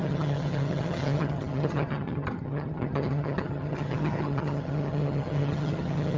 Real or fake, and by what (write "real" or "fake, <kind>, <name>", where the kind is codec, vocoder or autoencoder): fake, vocoder, HiFi-GAN